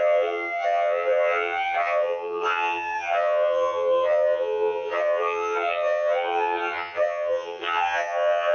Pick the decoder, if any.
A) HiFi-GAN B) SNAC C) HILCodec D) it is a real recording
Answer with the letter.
A